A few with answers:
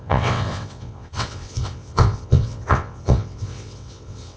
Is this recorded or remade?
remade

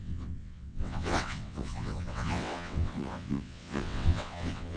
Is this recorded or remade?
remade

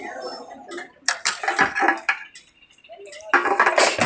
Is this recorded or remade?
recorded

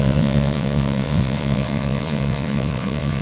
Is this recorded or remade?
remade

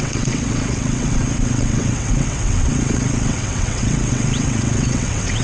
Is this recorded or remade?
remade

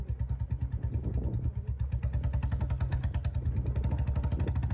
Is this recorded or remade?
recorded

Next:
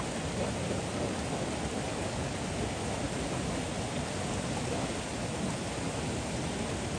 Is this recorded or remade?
recorded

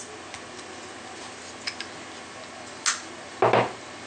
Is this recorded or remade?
recorded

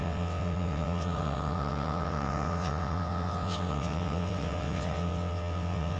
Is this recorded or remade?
remade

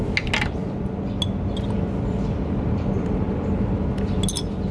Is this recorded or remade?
recorded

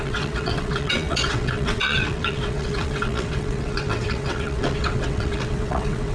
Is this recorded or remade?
remade